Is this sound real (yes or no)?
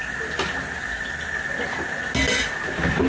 yes